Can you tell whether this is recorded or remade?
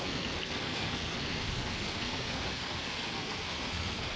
remade